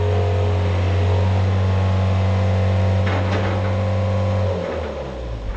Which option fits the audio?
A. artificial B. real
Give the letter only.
B